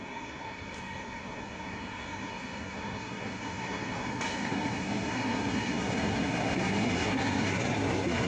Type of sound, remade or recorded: remade